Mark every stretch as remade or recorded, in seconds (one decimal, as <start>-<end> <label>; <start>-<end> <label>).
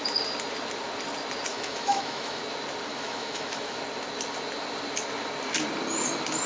0.0-1.5 recorded; 1.5-2.4 remade; 2.4-2.9 recorded; 2.9-3.8 remade; 3.8-6.5 recorded